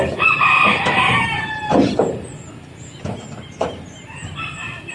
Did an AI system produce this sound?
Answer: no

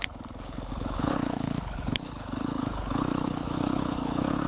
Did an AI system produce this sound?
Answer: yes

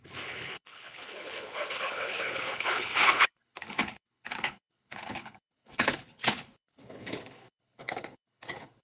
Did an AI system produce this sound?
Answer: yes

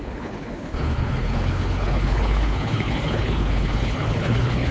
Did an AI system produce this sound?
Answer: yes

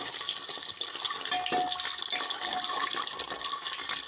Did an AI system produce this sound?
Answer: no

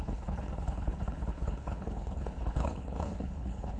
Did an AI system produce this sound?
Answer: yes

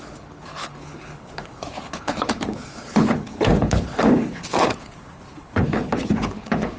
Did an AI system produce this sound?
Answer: yes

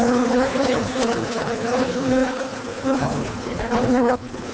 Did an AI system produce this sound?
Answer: yes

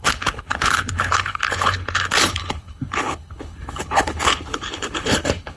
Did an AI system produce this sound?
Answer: yes